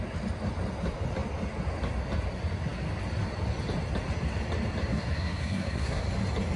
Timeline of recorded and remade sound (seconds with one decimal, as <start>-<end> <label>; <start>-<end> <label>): 0.0-4.9 recorded; 4.9-6.0 remade; 6.0-6.6 recorded